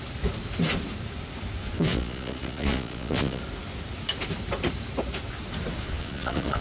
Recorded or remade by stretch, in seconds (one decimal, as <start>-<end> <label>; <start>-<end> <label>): 0.0-1.6 recorded; 1.6-3.4 remade; 3.4-5.8 recorded; 5.8-6.6 remade